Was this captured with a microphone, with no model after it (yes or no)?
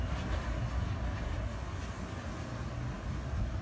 yes